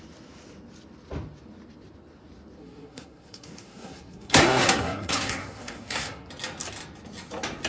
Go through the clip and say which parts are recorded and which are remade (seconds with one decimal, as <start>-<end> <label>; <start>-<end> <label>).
0.0-2.6 recorded; 2.6-6.3 remade; 6.3-7.7 recorded

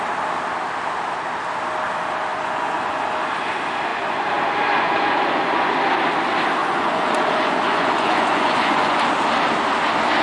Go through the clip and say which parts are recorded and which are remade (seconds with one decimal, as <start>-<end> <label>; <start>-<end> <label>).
0.0-2.3 recorded; 2.3-3.1 remade; 3.1-3.9 recorded; 3.9-5.7 remade; 5.7-6.6 recorded; 6.6-9.0 remade; 9.0-10.2 recorded